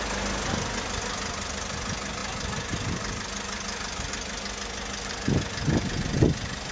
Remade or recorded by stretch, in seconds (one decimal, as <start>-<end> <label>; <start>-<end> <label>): 0.0-6.7 recorded